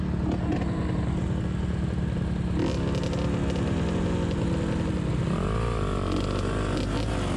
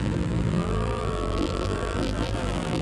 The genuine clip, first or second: first